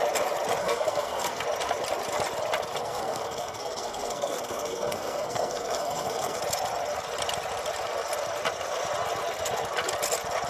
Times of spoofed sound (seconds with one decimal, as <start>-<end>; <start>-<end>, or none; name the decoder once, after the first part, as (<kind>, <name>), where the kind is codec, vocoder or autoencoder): 0.6-1.4 (codec, SNAC); 2.8-6.4